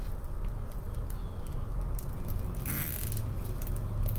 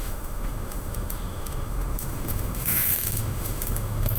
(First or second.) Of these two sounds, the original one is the first